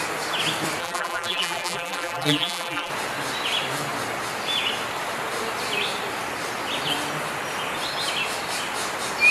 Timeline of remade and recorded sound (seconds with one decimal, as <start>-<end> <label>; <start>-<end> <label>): 0.0-0.8 recorded; 0.8-2.9 remade; 2.9-9.3 recorded